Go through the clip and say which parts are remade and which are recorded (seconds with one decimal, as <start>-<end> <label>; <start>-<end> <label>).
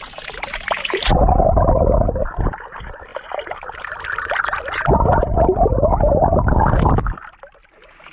0.0-8.1 recorded